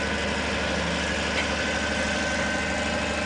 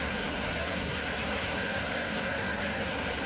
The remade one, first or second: second